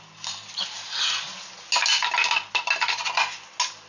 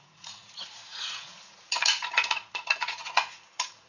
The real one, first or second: first